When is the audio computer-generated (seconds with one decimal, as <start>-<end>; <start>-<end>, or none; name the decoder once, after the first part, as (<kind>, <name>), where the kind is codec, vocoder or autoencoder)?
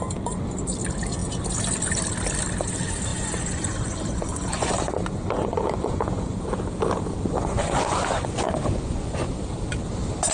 3.1-6.4 (vocoder, Vocos); 7.3-9.3